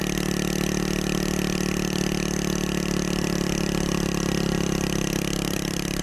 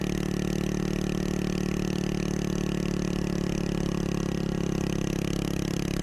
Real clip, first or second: second